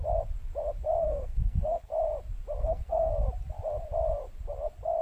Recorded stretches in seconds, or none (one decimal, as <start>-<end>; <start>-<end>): 0.0-1.0; 1.9-2.6; 3.1-5.0